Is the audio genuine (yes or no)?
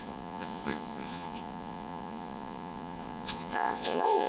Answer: no